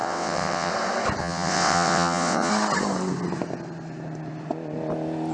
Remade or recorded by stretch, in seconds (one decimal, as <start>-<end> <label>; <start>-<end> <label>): 0.0-0.7 remade; 0.7-1.2 recorded; 1.2-2.5 remade; 2.5-5.3 recorded